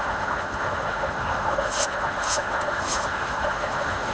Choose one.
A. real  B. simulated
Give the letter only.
B